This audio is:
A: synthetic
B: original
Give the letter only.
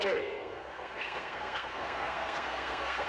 A